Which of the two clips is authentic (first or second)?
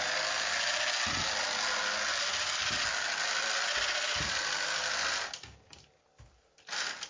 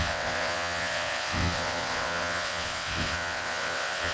first